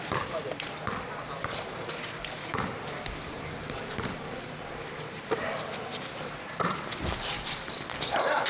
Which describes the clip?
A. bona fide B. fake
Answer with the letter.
B